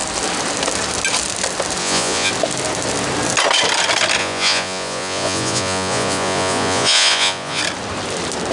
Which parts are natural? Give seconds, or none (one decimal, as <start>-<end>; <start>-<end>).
0.0-1.8; 2.3-4.2; 7.6-8.5